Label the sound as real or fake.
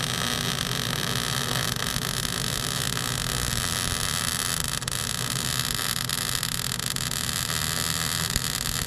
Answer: real